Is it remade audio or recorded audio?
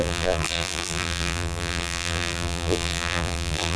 remade